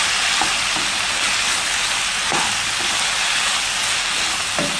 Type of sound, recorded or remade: recorded